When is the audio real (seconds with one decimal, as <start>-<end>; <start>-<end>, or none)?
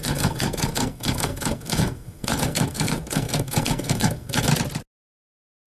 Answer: 4.5-5.2